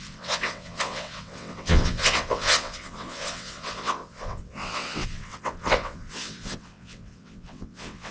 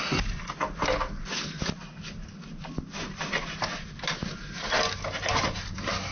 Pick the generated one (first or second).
first